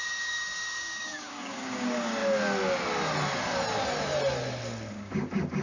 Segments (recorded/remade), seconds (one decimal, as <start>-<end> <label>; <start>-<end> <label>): 0.0-2.2 remade; 2.2-4.9 recorded; 4.9-5.6 remade